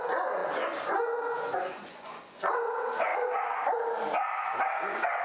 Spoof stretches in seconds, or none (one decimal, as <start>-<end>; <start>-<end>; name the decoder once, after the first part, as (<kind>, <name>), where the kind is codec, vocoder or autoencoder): 0.0-3.1 (vocoder, Vocos)